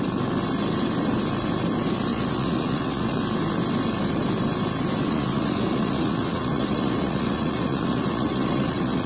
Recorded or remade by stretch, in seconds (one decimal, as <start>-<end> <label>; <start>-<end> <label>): 0.0-2.1 recorded; 2.1-3.2 remade; 3.2-5.1 recorded; 5.1-9.1 remade